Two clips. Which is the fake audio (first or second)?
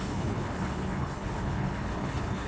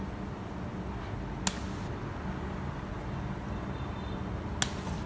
first